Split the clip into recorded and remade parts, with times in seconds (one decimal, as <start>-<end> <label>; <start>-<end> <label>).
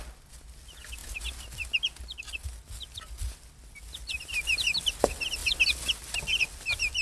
0.0-7.0 recorded